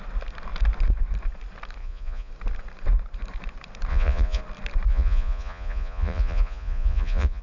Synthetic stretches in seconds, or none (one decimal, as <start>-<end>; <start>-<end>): 1.8-2.3; 3.9-4.4; 4.9-7.4